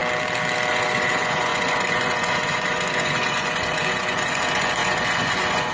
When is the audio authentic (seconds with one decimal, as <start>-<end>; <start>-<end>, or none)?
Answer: 0.0-0.7